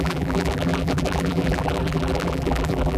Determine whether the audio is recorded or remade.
remade